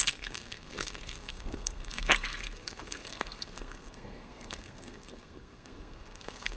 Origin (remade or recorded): remade